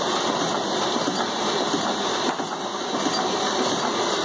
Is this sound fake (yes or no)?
no